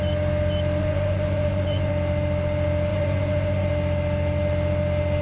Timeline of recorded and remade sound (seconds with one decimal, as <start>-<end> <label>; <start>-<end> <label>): 0.0-0.8 recorded; 0.8-1.9 remade; 1.9-2.9 recorded; 2.9-3.7 remade; 3.7-5.2 recorded